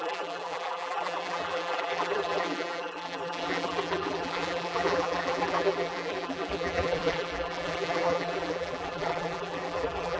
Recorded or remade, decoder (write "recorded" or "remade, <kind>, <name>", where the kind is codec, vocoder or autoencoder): remade, vocoder, BigVGAN v2